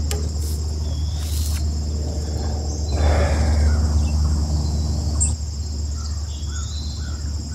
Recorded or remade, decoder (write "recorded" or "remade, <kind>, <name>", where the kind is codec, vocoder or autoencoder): recorded